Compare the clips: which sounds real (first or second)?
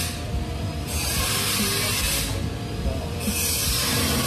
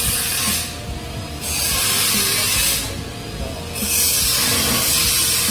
second